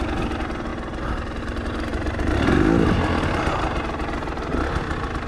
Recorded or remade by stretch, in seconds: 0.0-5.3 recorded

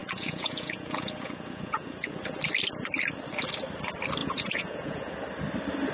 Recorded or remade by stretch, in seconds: 0.0-2.1 remade; 2.1-4.2 recorded; 4.2-5.1 remade; 5.1-5.9 recorded